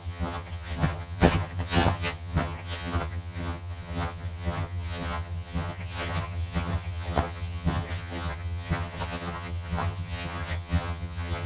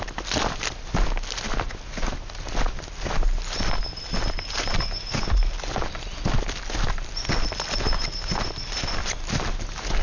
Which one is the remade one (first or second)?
first